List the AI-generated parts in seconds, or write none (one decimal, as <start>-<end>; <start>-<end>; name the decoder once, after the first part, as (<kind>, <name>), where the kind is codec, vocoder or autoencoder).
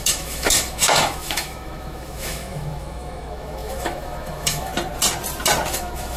0.0-4.7 (autoencoder, DAC-VAE); 5.7-6.2